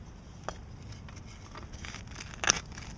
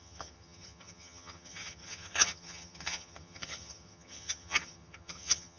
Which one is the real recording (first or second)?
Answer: first